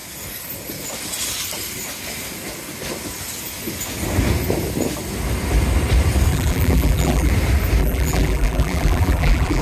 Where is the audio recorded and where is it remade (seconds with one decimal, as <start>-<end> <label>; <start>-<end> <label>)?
0.0-6.3 recorded; 6.3-7.3 remade; 7.3-7.8 recorded; 7.8-9.6 remade